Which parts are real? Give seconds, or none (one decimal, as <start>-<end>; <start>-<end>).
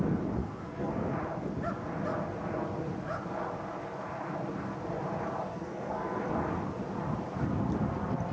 0.0-0.4; 1.1-5.5; 6.2-8.3